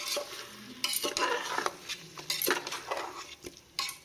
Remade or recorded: recorded